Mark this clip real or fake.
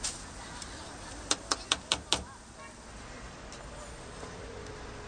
real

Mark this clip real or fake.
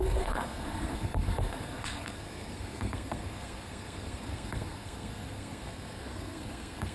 fake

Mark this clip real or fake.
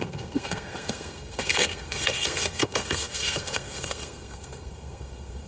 fake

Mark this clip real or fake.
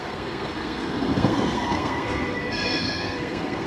fake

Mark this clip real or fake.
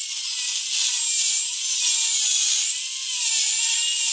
real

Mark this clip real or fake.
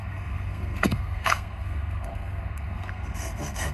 fake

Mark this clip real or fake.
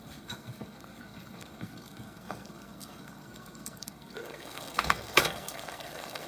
fake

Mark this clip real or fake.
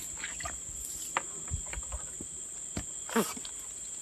real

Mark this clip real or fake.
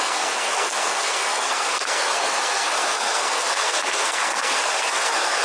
fake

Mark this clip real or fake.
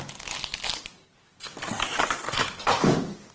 real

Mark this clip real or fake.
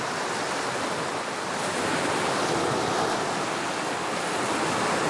real